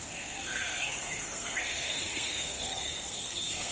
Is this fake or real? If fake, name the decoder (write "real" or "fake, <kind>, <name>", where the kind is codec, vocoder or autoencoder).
fake, codec, SNAC